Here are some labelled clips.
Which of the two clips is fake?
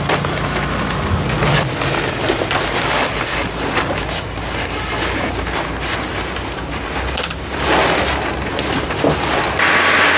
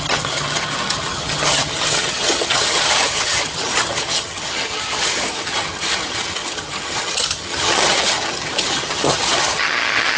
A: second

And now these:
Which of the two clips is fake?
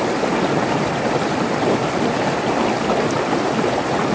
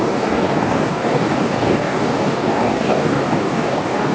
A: second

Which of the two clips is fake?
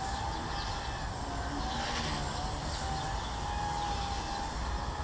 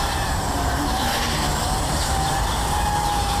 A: second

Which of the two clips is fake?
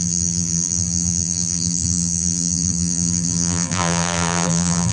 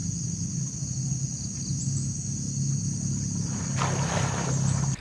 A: first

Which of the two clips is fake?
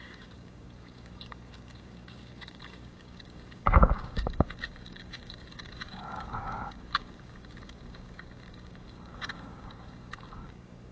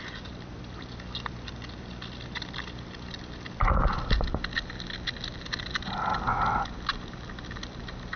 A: first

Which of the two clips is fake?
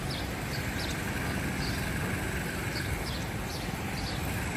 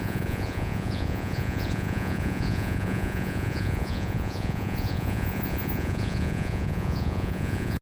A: second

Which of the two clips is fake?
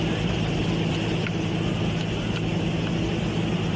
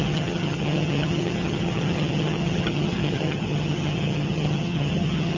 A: second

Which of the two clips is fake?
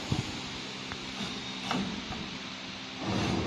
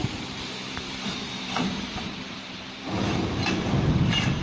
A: second